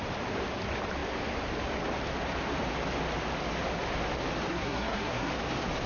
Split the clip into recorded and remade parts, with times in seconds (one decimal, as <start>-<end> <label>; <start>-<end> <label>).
0.0-4.5 recorded; 4.5-5.3 remade; 5.3-5.9 recorded